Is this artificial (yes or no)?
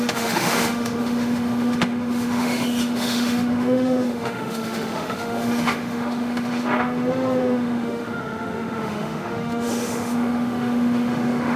yes